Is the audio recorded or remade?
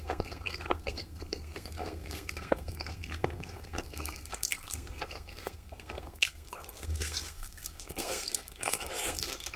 remade